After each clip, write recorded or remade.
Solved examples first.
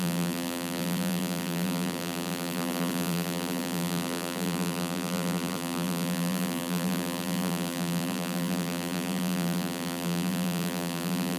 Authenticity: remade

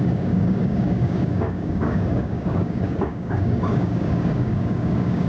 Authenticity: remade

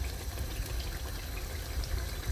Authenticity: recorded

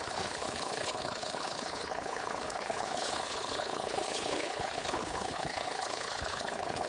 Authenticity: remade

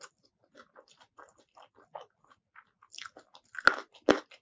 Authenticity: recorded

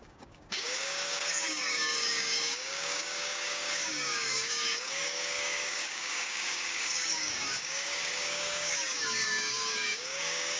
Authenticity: remade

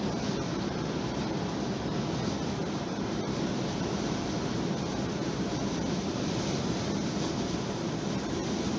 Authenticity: recorded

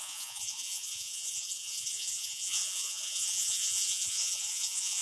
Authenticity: remade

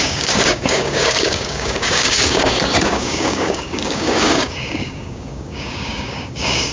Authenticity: remade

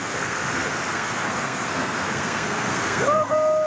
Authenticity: remade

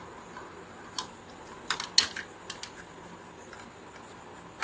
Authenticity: recorded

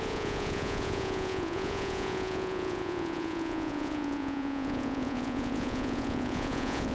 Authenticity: remade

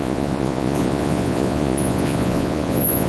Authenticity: remade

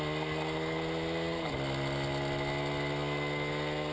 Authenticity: recorded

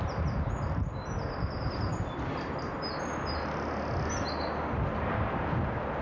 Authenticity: recorded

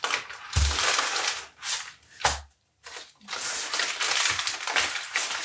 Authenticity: recorded